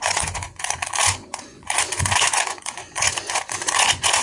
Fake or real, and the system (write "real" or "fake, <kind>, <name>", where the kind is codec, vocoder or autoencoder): fake, vocoder, Vocos